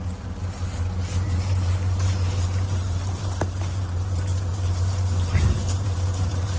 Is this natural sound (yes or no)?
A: no